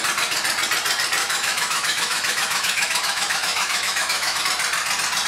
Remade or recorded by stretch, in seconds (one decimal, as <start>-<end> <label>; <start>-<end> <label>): 0.0-1.2 recorded; 1.2-4.4 remade; 4.4-5.3 recorded